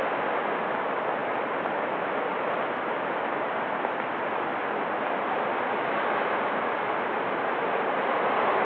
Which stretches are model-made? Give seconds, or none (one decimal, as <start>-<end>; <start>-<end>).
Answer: none